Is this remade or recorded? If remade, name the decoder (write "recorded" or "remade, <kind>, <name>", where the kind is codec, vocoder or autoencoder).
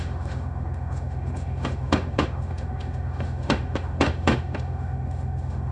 remade, autoencoder, DAC-VAE